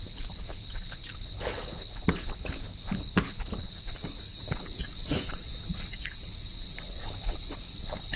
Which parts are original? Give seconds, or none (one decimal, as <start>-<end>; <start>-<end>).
none